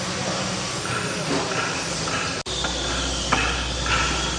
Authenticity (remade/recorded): recorded